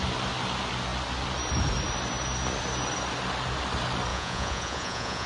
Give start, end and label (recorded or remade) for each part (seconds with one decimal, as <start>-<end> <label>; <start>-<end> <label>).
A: 0.0-4.1 recorded; 4.1-5.3 remade

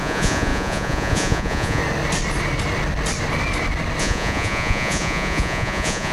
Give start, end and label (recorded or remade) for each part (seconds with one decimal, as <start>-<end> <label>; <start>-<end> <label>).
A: 0.0-1.8 remade; 1.8-4.0 recorded; 4.0-6.1 remade

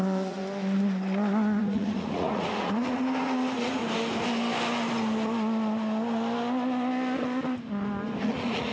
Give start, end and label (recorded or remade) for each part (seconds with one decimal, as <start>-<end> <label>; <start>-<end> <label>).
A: 0.0-0.4 remade; 0.4-1.6 recorded; 1.6-3.8 remade; 3.8-8.2 recorded; 8.2-8.7 remade

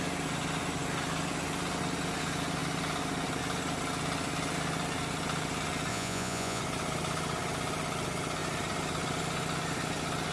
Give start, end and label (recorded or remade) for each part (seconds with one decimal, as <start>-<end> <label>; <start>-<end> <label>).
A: 0.0-5.9 recorded; 5.9-6.6 remade; 6.6-10.3 recorded